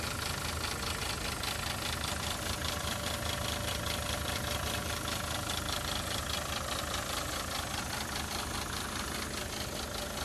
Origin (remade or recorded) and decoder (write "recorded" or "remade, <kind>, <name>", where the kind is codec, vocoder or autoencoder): recorded